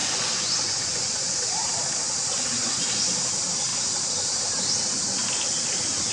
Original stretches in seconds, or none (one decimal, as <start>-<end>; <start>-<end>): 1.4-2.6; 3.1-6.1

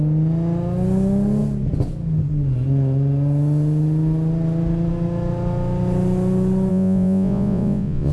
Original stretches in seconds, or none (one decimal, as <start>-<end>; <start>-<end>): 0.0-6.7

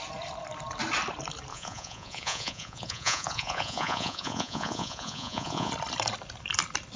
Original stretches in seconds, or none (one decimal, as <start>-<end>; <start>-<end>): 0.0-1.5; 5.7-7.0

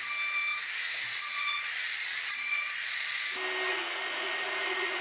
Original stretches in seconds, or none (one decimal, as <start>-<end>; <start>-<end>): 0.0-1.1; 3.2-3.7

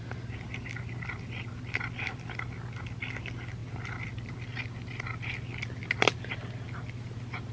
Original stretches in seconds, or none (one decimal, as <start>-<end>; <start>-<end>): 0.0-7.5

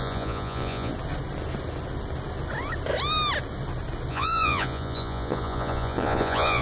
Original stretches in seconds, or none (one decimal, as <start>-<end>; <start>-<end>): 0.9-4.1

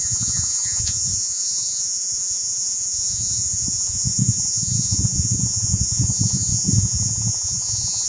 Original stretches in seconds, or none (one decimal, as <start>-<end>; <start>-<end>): none